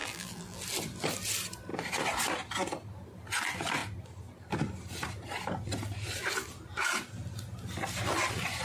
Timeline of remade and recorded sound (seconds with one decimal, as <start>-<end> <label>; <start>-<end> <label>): 0.0-0.6 remade; 0.6-8.6 recorded